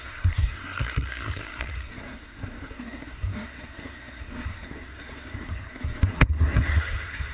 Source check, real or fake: fake